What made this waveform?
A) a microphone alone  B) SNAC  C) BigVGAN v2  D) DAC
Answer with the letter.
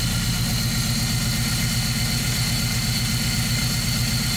A